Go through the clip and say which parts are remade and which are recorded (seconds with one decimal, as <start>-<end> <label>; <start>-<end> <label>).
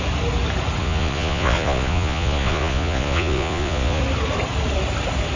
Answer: 0.0-0.8 recorded; 0.8-4.0 remade; 4.0-5.4 recorded